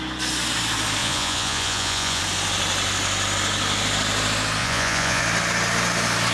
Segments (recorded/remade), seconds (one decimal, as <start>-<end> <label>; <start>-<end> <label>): 0.0-1.0 recorded; 1.0-2.2 remade; 2.2-4.6 recorded; 4.6-5.2 remade; 5.2-6.3 recorded